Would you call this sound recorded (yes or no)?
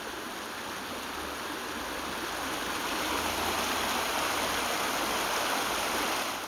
yes